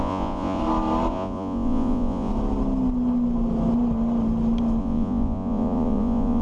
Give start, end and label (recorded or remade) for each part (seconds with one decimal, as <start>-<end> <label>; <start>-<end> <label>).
0.0-0.6 remade; 0.6-1.1 recorded; 1.1-2.3 remade; 2.3-4.8 recorded; 4.8-6.4 remade